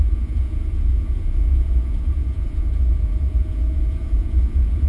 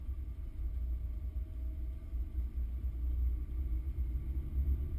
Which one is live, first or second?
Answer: second